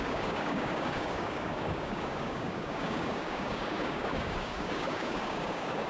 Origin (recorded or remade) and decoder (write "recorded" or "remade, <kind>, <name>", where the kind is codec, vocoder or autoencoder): remade, codec, DAC